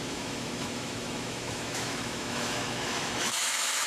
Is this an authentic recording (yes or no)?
no